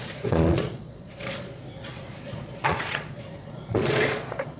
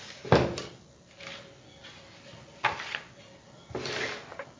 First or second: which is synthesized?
first